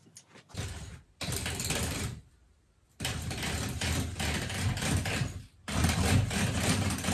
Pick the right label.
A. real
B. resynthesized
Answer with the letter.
A